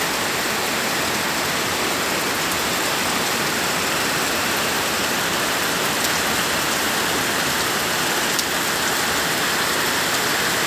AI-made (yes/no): yes